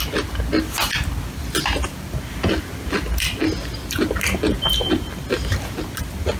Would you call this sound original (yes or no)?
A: yes